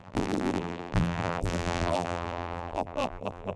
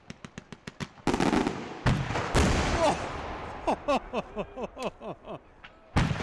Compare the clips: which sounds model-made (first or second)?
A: first